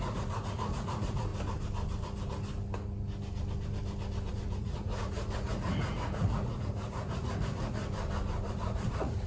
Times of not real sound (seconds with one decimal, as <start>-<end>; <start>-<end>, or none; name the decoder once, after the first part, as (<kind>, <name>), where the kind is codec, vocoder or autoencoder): 0.0-1.3 (vocoder, Vocos); 4.3-7.8; 8.5-9.3